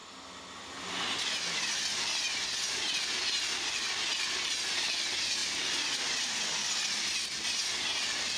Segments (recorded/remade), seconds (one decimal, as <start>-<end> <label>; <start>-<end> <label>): 0.0-8.4 recorded